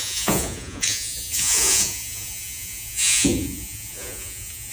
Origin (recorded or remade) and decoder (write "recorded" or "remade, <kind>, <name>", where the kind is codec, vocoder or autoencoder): remade, vocoder, Vocos